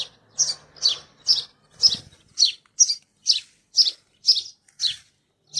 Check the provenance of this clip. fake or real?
real